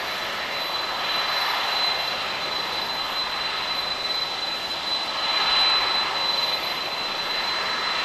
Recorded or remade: recorded